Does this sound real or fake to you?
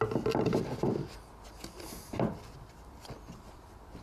real